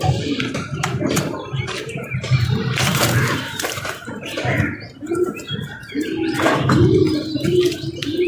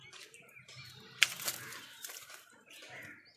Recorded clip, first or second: second